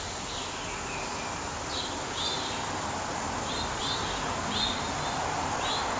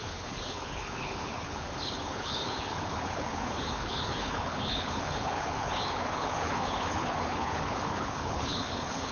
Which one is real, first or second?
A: first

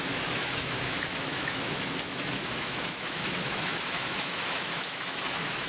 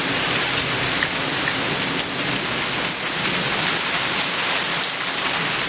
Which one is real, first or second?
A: second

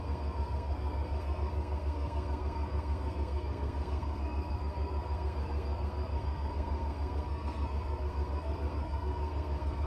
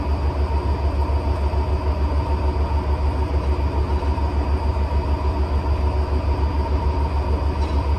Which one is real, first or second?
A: second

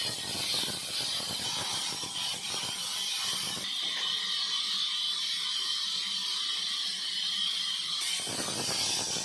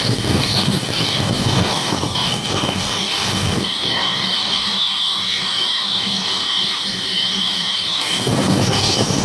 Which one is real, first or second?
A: first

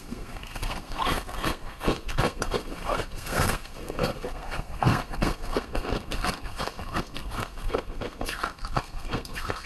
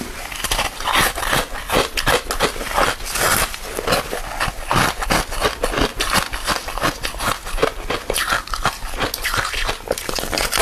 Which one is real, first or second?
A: second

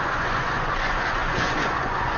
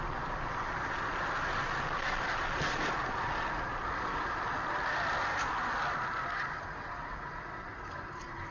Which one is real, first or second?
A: second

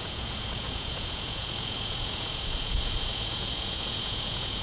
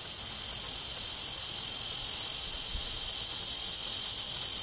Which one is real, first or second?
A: second